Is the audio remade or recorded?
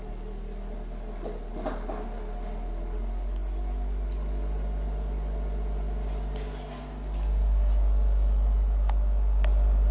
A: recorded